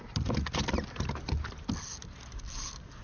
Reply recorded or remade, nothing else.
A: recorded